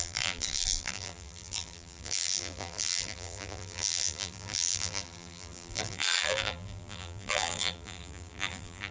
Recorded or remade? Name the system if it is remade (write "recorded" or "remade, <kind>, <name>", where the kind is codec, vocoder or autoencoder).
remade, vocoder, BigVGAN v2